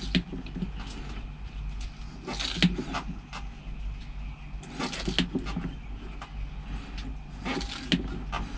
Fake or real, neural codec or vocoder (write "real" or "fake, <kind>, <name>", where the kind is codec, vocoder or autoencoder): real